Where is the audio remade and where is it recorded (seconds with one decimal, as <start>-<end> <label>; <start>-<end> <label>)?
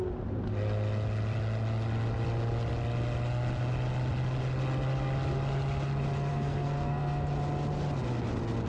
0.0-6.3 recorded; 6.3-7.3 remade; 7.3-8.7 recorded